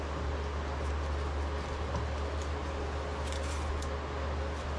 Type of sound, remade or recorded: recorded